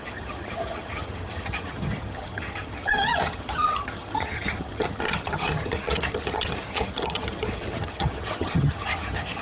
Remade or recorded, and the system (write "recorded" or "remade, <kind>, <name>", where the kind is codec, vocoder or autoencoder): remade, vocoder, HiFi-GAN